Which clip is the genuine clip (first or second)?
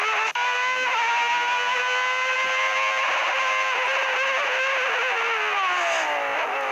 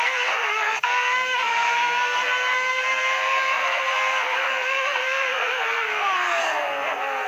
first